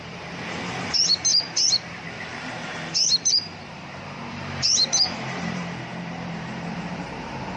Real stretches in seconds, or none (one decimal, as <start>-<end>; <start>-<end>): none